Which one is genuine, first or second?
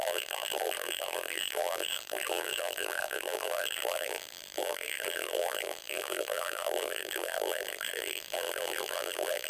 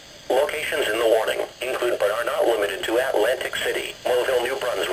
second